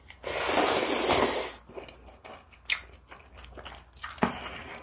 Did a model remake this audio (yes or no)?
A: no